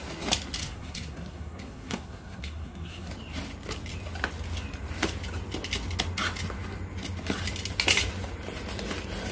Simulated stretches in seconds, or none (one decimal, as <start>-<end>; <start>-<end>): 0.6-3.1

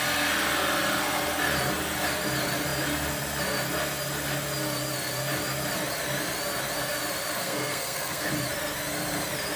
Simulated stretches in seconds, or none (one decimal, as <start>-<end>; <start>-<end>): 7.4-8.3

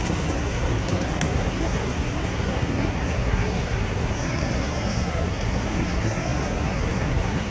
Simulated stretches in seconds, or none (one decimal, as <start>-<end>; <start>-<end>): 0.0-7.5

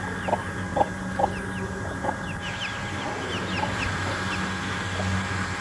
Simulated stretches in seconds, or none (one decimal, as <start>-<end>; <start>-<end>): none

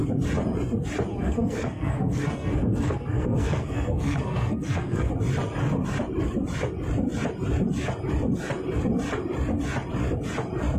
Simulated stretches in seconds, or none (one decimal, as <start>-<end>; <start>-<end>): 1.1-5.1

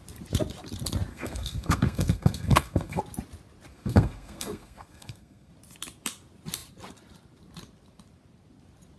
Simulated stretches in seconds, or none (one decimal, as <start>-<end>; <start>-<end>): 1.1-3.0; 3.7-5.5

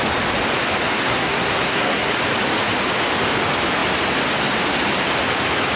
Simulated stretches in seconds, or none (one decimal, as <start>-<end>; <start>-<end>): 1.0-2.1

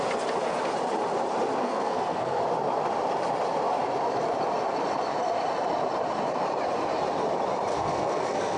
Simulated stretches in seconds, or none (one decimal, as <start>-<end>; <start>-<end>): 1.6-2.4; 7.7-8.6